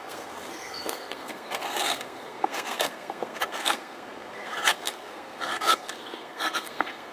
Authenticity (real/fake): fake